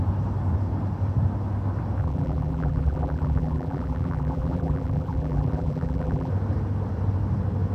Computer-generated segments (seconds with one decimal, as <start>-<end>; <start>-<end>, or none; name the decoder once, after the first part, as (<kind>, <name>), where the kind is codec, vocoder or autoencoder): 2.0-6.3 (vocoder, BigVGAN v2)